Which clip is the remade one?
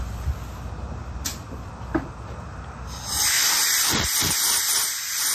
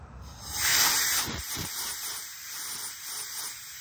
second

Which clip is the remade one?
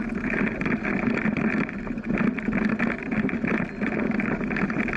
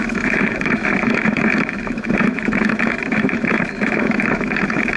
second